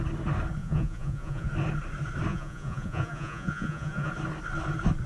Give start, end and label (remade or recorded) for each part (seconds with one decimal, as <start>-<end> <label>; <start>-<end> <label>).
0.0-0.6 recorded; 0.6-1.5 remade; 1.5-2.3 recorded; 2.3-4.1 remade; 4.1-5.1 recorded